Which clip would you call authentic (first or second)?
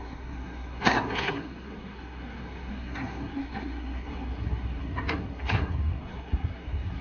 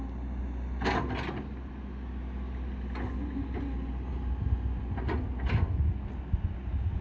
second